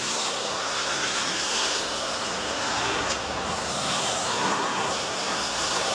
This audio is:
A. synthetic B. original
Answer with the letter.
A